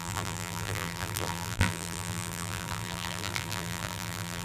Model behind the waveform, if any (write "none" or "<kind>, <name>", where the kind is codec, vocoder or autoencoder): vocoder, BigVGAN v2